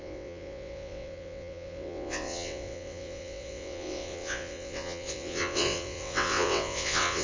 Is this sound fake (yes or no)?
yes